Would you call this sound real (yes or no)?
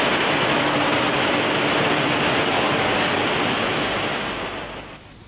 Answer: yes